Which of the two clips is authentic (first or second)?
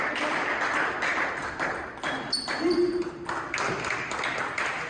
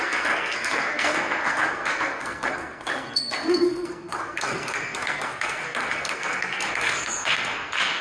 first